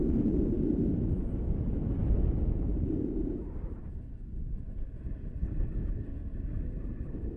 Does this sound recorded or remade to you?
recorded